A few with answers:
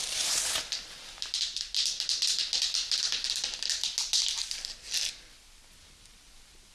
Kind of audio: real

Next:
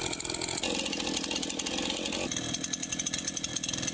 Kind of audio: real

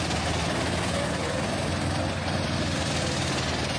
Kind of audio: real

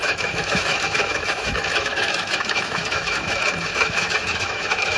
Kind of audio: fake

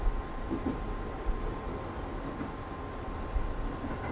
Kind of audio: real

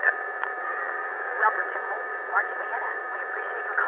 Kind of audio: fake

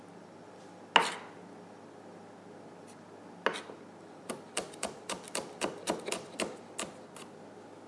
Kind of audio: real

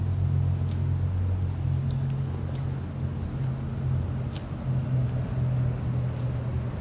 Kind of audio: real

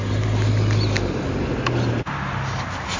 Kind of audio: real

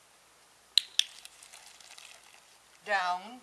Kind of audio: real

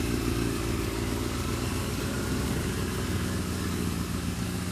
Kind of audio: fake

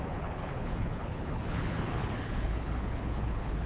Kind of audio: fake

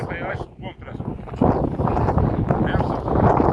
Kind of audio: real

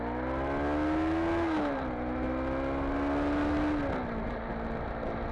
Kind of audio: real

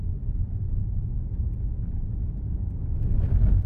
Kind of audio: real